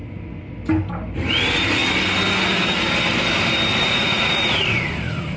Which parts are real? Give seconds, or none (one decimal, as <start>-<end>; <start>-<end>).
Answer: 0.0-3.7

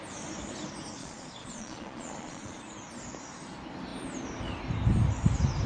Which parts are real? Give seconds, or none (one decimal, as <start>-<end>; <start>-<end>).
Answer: 0.0-1.0; 2.6-5.7

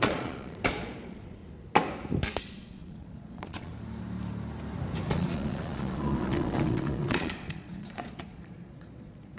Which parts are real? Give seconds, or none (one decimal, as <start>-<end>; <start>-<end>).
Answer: 1.4-2.4; 3.7-5.1

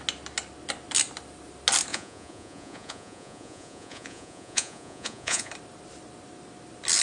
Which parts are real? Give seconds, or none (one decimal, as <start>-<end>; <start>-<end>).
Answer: 0.0-1.9; 5.5-7.0